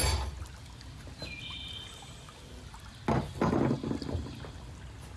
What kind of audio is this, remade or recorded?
recorded